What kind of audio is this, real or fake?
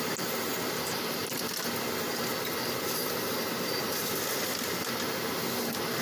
real